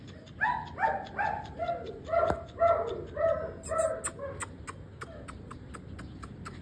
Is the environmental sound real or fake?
real